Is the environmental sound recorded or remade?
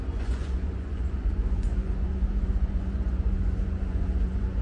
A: remade